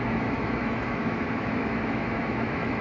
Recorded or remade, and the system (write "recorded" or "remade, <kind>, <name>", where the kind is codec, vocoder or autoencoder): remade, autoencoder, DAC-VAE